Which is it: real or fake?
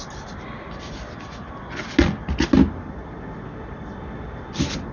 real